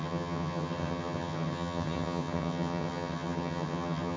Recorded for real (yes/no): no